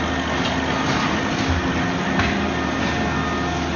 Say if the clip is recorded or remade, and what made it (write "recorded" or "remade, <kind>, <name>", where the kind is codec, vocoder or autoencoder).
recorded